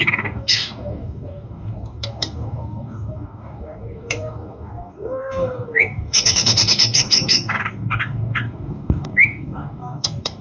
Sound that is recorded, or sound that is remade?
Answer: remade